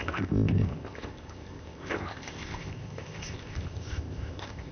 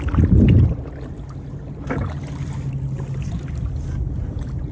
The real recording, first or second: second